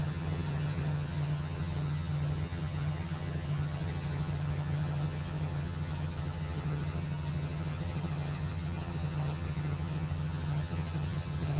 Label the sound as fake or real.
fake